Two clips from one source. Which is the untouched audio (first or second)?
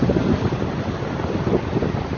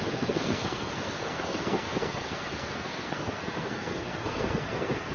first